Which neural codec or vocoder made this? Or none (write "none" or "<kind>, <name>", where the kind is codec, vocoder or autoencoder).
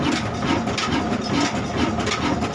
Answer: none